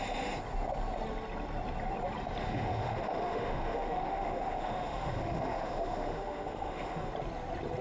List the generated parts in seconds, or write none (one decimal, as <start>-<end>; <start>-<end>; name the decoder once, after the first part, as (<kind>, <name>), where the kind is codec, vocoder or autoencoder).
2.4-7.1 (autoencoder, DAC-VAE)